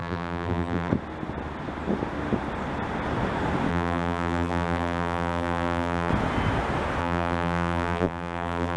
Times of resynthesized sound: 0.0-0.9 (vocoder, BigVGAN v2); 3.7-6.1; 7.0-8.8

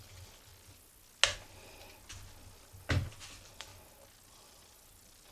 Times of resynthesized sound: 0.0-0.5 (vocoder, BigVGAN v2); 3.2-3.7; 4.3-5.3

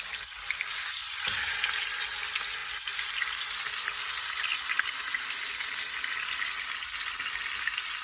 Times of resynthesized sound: none

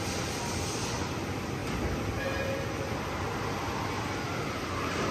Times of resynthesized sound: none

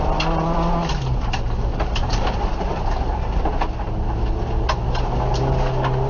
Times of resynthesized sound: 1.7-2.4 (vocoder, BigVGAN v2)

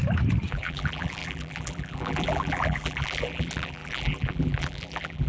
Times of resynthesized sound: 0.5-5.3 (vocoder, BigVGAN v2)

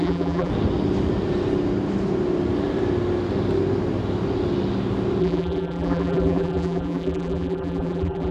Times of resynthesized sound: 0.0-0.5 (vocoder, BigVGAN v2); 5.2-8.3

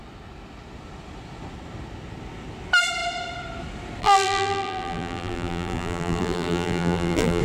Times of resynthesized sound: 4.0-7.4 (vocoder, BigVGAN v2)